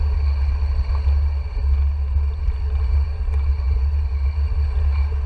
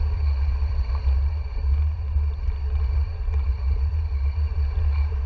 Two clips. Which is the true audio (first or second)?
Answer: first